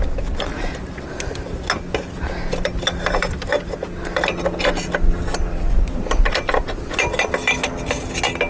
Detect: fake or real real